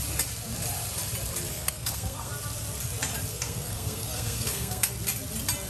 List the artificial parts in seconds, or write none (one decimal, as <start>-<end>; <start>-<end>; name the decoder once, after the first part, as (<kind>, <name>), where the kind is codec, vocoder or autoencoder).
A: 1.5-2.3 (codec, SNAC); 3.3-4.9